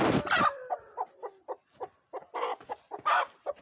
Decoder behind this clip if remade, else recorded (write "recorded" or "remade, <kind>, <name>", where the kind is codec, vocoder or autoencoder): recorded